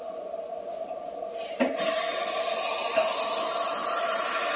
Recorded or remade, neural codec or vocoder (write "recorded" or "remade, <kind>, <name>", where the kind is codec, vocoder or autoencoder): recorded